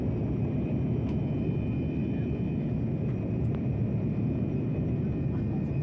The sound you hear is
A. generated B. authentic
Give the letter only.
B